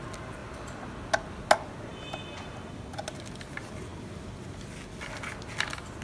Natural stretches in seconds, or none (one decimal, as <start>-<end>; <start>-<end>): 0.0-6.0